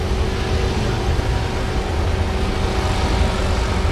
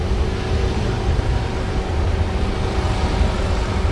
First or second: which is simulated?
second